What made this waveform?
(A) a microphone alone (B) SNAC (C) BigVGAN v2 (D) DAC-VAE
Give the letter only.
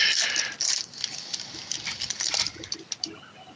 A